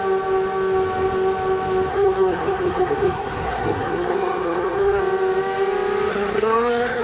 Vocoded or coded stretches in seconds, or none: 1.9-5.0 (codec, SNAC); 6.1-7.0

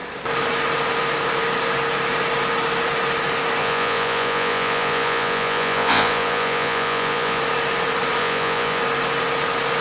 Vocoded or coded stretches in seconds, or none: 3.6-7.4 (vocoder, Vocos); 8.2-8.8

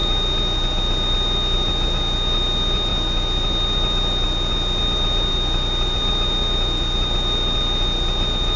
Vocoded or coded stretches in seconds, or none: none